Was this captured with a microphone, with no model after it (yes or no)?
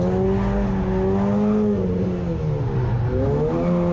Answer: yes